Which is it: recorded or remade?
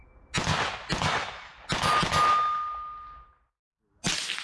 recorded